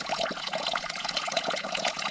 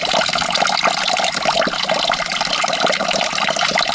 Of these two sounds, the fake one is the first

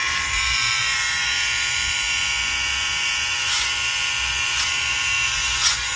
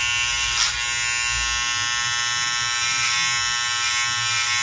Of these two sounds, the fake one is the first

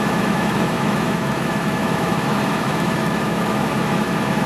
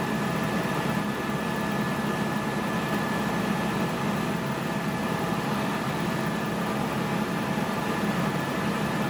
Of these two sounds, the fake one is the first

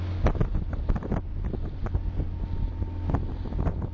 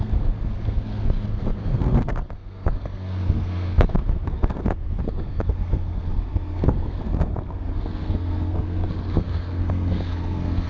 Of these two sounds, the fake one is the second